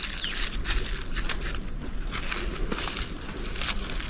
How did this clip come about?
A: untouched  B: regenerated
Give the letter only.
A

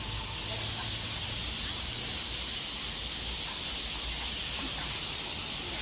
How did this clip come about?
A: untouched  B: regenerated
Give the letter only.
A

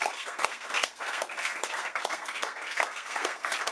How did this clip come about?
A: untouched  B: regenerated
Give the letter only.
B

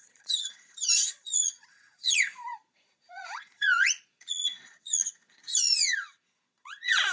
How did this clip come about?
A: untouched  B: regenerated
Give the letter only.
B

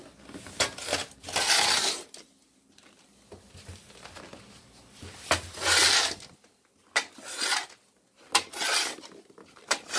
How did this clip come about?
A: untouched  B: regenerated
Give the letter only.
A